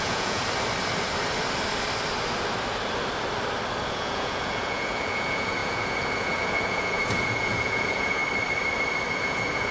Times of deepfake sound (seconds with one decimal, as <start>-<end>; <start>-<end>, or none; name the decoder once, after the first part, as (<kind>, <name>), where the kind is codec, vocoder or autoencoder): 0.0-0.4 (vocoder, Vocos); 3.9-8.2; 9.1-9.7